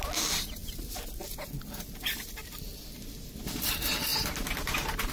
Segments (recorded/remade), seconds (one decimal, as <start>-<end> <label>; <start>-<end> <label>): 0.0-5.1 recorded